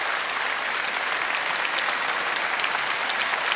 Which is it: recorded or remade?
recorded